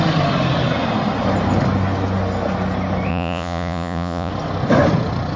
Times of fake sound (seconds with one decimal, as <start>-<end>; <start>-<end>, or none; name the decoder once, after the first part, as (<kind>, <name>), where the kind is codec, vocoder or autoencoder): 3.1-4.3 (vocoder, Vocos)